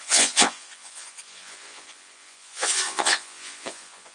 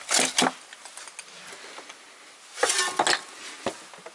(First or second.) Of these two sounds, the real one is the second